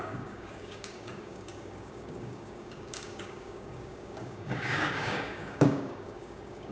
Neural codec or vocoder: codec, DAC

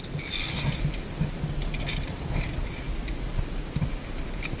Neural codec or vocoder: none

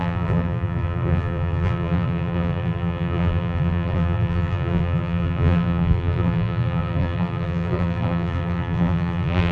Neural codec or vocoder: vocoder, BigVGAN v2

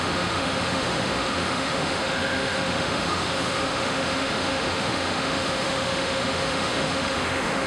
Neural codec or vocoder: autoencoder, DAC-VAE